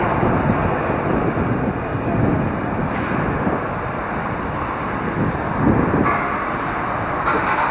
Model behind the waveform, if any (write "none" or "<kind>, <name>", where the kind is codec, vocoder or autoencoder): none